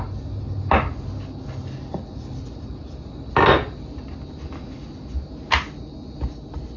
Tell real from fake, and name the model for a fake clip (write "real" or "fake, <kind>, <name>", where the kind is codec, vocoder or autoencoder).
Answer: real